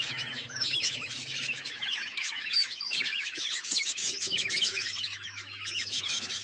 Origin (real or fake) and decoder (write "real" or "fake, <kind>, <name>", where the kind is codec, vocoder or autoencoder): fake, autoencoder, DAC-VAE